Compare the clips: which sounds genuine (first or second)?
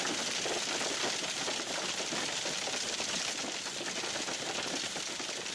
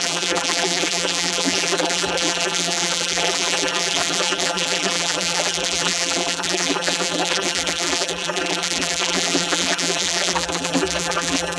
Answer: first